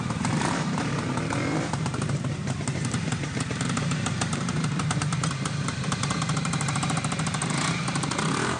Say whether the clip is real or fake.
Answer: fake